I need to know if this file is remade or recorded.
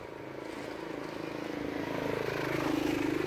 recorded